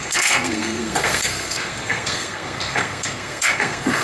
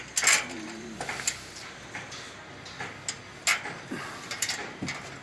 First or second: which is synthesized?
first